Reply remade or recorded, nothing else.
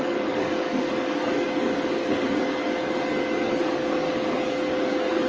remade